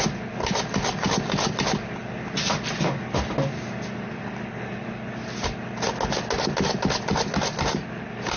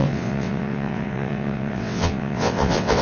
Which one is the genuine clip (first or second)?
first